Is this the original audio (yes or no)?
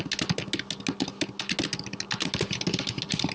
yes